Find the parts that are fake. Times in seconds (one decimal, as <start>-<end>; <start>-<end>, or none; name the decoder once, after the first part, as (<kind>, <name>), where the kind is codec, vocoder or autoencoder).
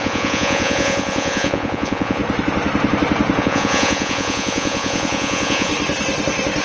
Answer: 0.0-2.2 (vocoder, Vocos); 3.4-5.7